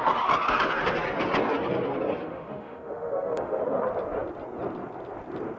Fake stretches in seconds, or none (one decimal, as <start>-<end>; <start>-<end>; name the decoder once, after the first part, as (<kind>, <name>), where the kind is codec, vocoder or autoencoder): 2.2-3.6 (autoencoder, DAC-VAE)